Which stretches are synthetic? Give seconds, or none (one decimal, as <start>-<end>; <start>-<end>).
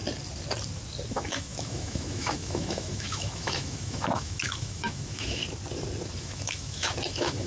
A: 1.1-5.4; 6.2-7.5